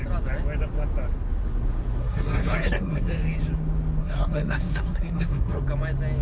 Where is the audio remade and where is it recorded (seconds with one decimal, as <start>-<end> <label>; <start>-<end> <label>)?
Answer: 0.0-2.0 recorded; 2.0-3.1 remade; 3.1-4.0 recorded; 4.0-5.6 remade; 5.6-6.2 recorded

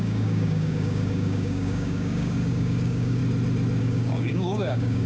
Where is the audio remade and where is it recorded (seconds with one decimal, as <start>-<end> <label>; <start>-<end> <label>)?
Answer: 0.0-3.2 remade; 3.2-3.8 recorded; 3.8-5.1 remade

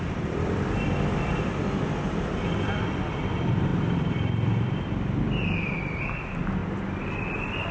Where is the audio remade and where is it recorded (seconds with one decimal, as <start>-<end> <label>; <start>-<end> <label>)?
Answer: 0.0-6.6 remade; 6.6-7.7 recorded

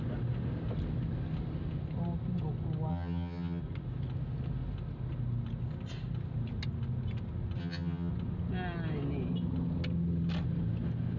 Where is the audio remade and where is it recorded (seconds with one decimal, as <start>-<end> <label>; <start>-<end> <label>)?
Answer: 0.0-2.9 recorded; 2.9-3.6 remade; 3.6-7.6 recorded; 7.6-8.1 remade; 8.1-11.2 recorded

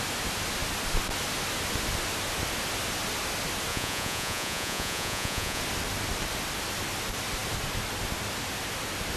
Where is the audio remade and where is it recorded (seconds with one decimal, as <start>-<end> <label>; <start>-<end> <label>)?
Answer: 0.0-3.7 recorded; 3.7-5.6 remade; 5.6-9.2 recorded

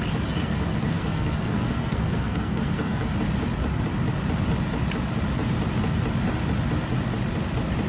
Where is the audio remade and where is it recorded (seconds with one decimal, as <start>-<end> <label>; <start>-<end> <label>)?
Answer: 0.0-0.4 recorded; 0.4-3.1 remade; 3.1-7.9 recorded

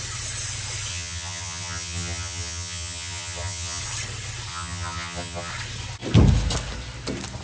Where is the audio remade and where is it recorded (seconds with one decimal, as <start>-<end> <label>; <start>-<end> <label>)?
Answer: 0.0-0.9 recorded; 0.9-3.8 remade; 3.8-4.5 recorded; 4.5-5.5 remade; 5.5-7.4 recorded

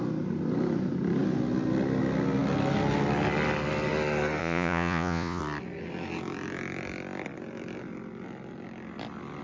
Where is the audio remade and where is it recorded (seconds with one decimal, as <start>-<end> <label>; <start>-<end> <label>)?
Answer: 0.0-4.4 recorded; 4.4-5.4 remade; 5.4-9.4 recorded